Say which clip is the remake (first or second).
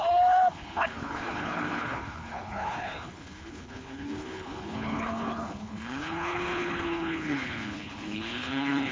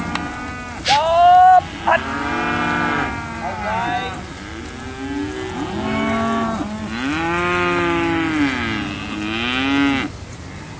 first